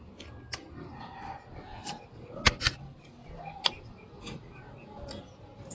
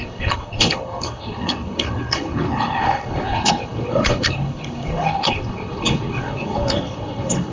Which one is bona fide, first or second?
first